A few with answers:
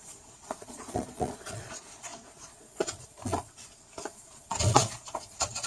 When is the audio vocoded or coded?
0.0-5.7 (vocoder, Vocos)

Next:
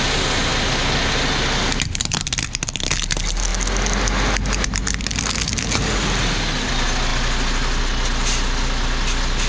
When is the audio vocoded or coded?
none

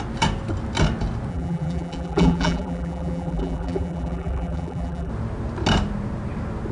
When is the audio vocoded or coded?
1.3-5.1 (vocoder, BigVGAN v2)

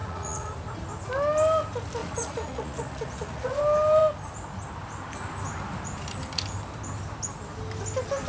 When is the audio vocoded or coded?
0.0-0.5 (vocoder, Vocos); 2.0-3.6

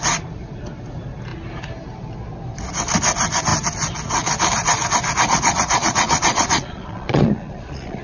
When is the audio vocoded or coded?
5.3-8.0 (vocoder, Vocos)

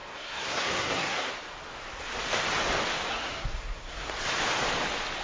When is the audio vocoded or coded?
0.0-1.3 (codec, SNAC); 3.1-4.1